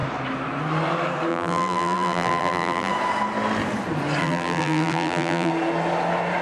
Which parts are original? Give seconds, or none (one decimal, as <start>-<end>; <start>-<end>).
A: 0.0-1.3; 2.9-4.2; 5.5-6.4